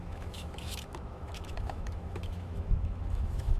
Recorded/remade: remade